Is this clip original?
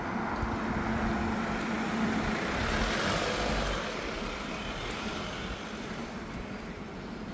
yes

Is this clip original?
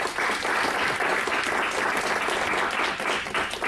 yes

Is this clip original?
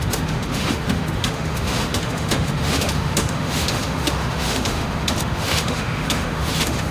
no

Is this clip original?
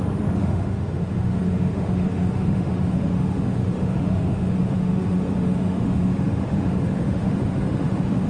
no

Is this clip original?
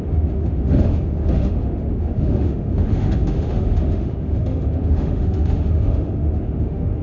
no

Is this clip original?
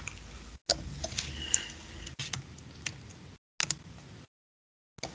yes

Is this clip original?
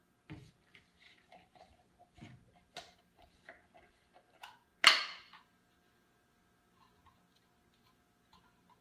yes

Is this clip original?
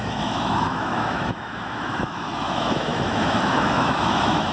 no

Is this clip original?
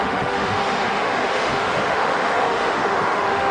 no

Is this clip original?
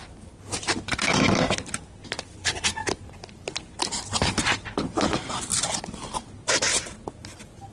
yes